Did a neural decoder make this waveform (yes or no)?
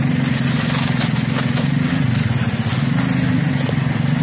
no